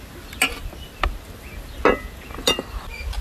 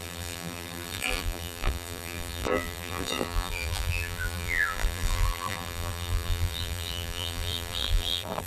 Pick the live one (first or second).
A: first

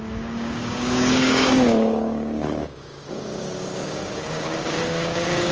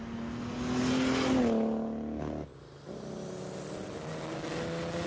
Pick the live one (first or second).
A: second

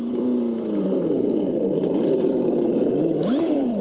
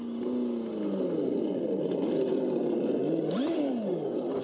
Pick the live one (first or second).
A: second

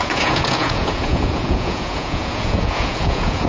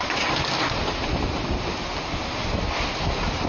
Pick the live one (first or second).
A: second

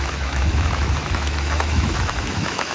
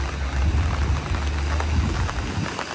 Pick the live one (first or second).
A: second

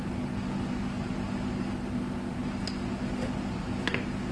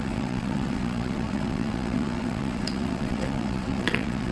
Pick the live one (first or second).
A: first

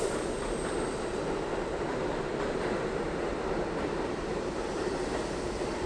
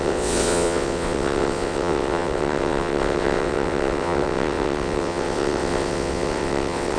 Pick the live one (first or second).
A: first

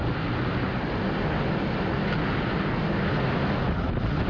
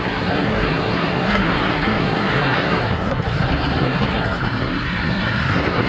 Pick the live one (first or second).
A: first